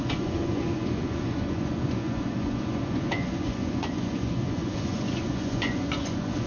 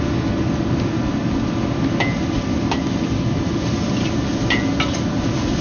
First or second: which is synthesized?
first